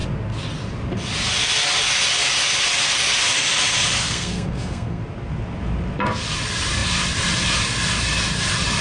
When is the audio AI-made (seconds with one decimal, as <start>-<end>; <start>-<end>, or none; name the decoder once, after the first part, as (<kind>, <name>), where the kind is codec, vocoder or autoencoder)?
4.0-5.0 (codec, SNAC)